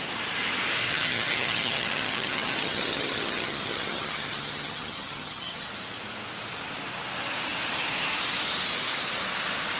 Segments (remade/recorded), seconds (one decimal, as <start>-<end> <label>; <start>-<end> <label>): 0.0-0.9 recorded; 0.9-5.7 remade; 5.7-9.8 recorded